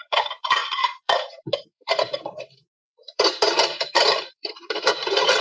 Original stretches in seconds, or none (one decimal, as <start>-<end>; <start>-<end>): none